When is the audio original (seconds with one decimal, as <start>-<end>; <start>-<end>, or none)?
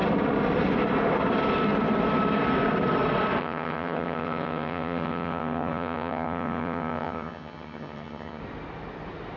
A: 0.0-3.4; 8.4-9.4